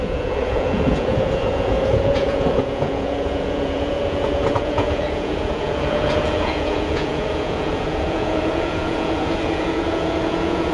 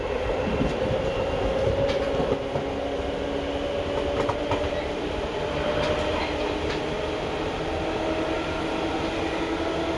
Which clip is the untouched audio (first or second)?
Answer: second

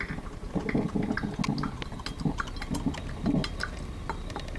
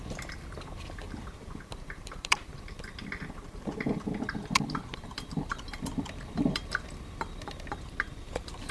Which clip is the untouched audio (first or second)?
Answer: first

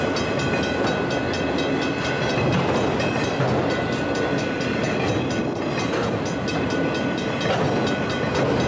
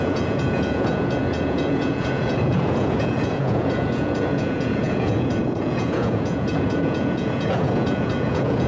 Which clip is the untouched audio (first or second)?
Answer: first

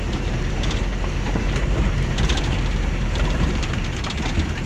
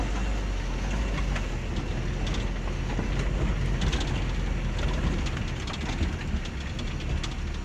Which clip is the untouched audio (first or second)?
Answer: second